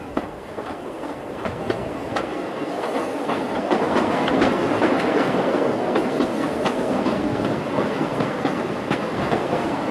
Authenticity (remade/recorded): remade